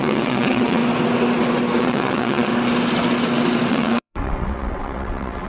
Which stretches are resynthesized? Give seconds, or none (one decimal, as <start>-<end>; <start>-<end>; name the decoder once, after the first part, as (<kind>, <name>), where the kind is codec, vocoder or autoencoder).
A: 0.0-0.8 (vocoder, WaveNeXt); 1.8-2.5; 3.7-5.5